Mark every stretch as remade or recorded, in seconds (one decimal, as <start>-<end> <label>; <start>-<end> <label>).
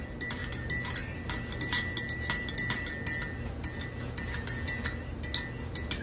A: 0.0-6.0 recorded